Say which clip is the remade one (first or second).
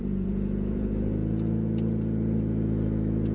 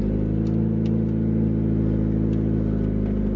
first